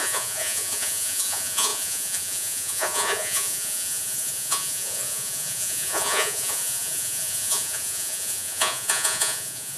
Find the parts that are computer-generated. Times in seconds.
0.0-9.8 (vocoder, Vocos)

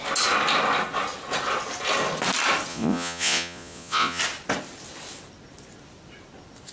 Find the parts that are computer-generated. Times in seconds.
2.7-4.2 (vocoder, Vocos)